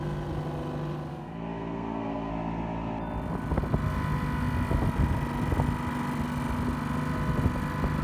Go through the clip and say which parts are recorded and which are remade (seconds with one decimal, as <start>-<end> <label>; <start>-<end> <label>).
0.0-1.1 recorded; 1.1-2.3 remade; 2.3-8.0 recorded